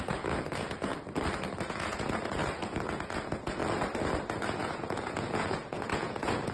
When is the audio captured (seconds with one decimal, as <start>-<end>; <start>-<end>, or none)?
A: 0.9-1.7; 3.6-4.6